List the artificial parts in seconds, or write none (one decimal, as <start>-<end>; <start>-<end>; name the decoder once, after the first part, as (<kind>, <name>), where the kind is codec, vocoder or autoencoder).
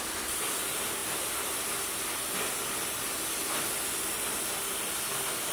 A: none